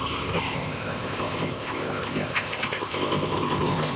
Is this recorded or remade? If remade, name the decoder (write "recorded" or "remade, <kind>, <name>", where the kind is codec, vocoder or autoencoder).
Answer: remade, codec, ZipCodec